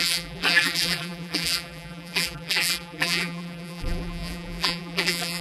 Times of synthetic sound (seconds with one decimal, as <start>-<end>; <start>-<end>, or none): 0.0-5.4